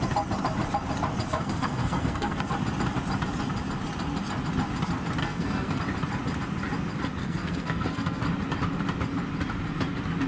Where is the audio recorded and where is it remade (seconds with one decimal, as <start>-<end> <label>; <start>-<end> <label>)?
0.0-1.3 recorded; 1.3-2.5 remade; 2.5-5.2 recorded; 5.2-5.8 remade; 5.8-7.2 recorded; 7.2-8.2 remade; 8.2-10.3 recorded